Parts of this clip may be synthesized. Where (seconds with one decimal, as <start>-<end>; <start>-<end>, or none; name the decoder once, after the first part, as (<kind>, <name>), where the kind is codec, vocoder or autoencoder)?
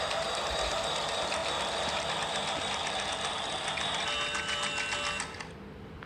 none